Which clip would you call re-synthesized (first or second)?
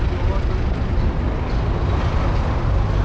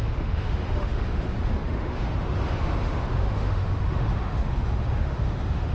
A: second